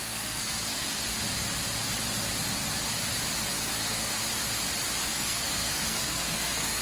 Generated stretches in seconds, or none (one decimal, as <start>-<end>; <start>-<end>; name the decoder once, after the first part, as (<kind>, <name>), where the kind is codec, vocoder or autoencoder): 0.0-1.0 (codec, SNAC); 3.5-4.2; 5.1-6.8